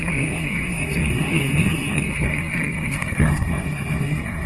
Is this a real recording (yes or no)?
no